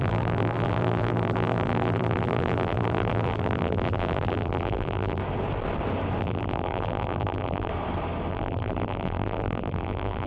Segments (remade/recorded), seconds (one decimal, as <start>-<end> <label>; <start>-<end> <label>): 0.0-5.2 remade; 5.2-6.2 recorded; 6.2-7.7 remade; 7.7-8.3 recorded; 8.3-10.3 remade